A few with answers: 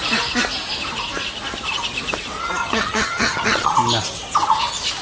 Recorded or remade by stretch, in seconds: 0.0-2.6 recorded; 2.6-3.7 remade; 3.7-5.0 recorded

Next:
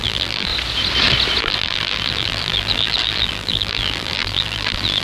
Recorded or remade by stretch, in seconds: 0.0-0.5 remade; 0.5-1.4 recorded; 1.4-5.0 remade

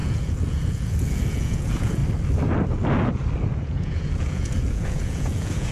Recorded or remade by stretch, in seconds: 0.0-2.0 remade; 2.0-3.5 recorded; 3.5-5.7 remade

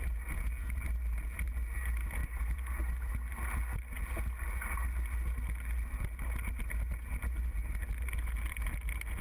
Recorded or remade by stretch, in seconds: 0.0-2.2 recorded; 2.2-3.1 remade; 3.1-9.2 recorded

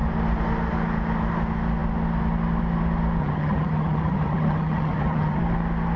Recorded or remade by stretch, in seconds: 0.0-3.2 recorded; 3.2-5.4 remade; 5.4-6.0 recorded

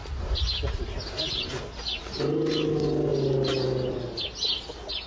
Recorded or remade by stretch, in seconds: 0.0-5.1 recorded

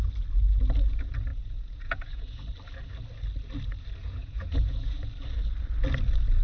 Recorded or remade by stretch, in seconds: 0.0-1.3 recorded; 1.3-2.4 remade; 2.4-4.0 recorded; 4.0-5.1 remade; 5.1-6.4 recorded